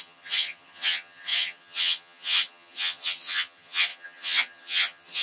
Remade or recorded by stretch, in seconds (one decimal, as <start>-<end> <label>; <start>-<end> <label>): 0.0-5.2 remade